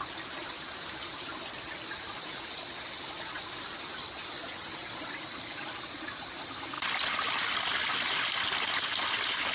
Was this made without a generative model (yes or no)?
yes